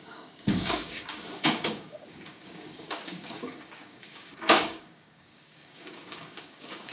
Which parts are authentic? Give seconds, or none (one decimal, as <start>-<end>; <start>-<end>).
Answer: none